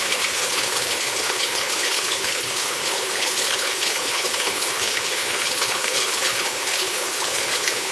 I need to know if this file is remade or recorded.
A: remade